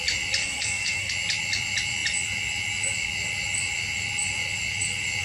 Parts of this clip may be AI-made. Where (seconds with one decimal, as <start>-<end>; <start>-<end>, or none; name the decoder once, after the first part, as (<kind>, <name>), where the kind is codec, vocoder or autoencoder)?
0.4-1.1 (codec, SNAC)